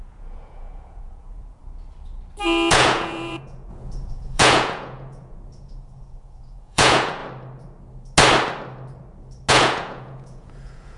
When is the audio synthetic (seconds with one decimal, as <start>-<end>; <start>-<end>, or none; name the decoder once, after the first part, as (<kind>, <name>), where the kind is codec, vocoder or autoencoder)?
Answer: 0.0-1.6 (vocoder, Vocos); 2.7-7.2; 9.5-11.0